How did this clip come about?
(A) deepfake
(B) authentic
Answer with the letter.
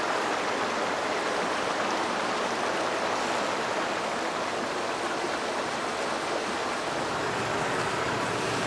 B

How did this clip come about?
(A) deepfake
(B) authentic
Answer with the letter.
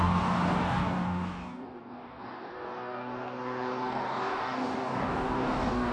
A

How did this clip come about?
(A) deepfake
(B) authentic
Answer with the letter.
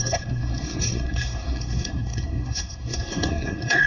A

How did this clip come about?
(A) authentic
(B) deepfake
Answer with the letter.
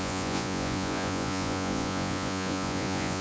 B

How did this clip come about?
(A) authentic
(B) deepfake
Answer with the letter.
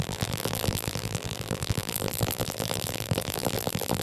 B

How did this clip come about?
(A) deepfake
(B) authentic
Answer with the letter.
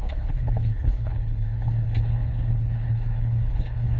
A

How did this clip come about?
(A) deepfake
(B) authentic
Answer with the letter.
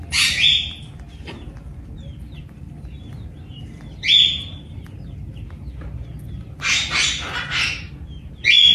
B